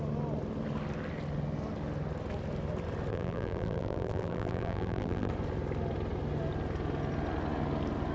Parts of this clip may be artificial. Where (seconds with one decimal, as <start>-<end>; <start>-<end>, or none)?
3.1-5.3

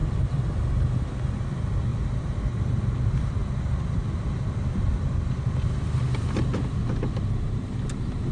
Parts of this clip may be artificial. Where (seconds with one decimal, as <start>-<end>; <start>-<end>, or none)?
0.0-0.5; 1.9-2.8; 3.4-6.7

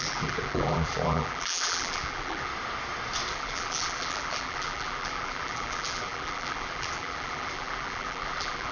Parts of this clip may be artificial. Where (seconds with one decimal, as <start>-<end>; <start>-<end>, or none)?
0.0-2.5; 3.3-8.7

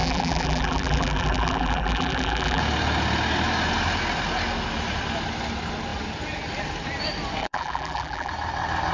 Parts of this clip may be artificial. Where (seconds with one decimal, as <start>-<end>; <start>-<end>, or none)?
0.0-2.6; 7.4-8.3

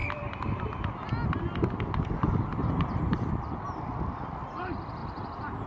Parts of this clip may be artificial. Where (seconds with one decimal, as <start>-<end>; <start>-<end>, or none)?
2.5-5.0

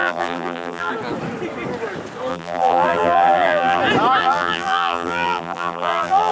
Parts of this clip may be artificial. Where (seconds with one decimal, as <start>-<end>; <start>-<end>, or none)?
0.0-0.9; 2.3-3.8; 4.2-6.3

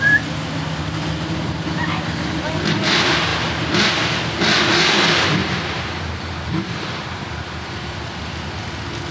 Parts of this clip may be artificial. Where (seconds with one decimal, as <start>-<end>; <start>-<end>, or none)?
5.4-8.0

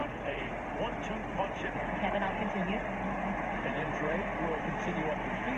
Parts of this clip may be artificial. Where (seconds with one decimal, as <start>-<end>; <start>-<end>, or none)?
0.0-0.5; 1.2-4.6